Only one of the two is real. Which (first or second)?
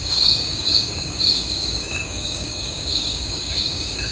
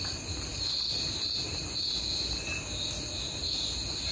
second